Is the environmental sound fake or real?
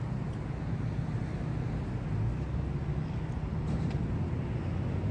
real